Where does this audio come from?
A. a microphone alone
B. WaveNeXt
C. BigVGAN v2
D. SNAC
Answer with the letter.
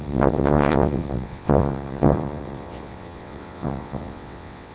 B